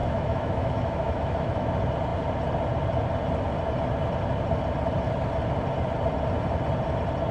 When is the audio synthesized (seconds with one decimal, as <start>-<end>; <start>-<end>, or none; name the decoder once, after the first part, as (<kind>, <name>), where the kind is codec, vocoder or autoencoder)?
0.0-1.7 (autoencoder, DAC-VAE)